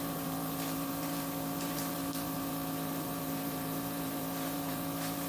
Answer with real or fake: fake